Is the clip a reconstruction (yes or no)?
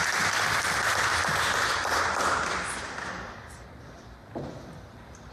yes